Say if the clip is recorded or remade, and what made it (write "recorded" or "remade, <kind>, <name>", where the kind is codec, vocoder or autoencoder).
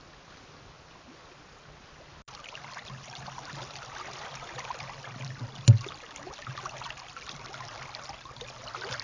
recorded